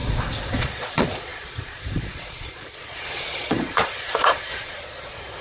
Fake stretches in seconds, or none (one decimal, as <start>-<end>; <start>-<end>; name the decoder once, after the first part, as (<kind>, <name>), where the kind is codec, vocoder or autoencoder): 0.0-5.4 (vocoder, Vocos)